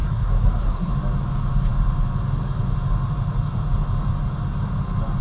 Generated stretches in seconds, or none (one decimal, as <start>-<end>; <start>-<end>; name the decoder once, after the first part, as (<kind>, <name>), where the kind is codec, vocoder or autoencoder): 0.0-0.9 (codec, SNAC)